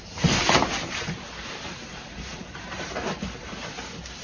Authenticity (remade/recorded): remade